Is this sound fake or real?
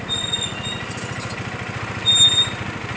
real